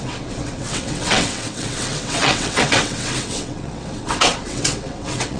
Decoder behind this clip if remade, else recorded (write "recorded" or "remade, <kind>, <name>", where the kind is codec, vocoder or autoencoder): remade, vocoder, WaveNeXt